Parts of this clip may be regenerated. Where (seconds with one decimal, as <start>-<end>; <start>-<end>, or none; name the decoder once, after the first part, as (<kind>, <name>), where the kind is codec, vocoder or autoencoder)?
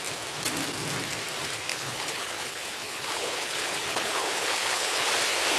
1.7-5.1 (codec, HILCodec)